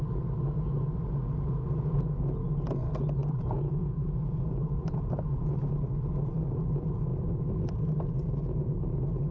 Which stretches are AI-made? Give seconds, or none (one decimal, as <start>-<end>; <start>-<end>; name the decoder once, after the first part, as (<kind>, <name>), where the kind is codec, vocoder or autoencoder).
3.2-5.7 (vocoder, Vocos)